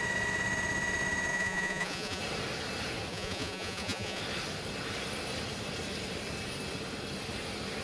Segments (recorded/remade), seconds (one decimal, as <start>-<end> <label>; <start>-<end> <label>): 0.0-1.3 recorded; 1.3-2.2 remade; 2.2-3.1 recorded; 3.1-4.2 remade; 4.2-7.8 recorded